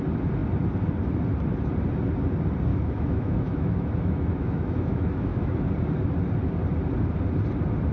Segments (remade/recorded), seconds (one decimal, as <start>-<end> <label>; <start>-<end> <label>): 0.0-2.7 recorded; 2.7-5.6 remade; 5.6-7.9 recorded